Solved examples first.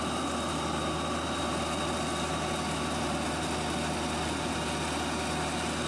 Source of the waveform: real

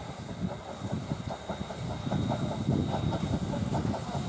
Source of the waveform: real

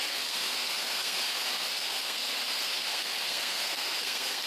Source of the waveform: fake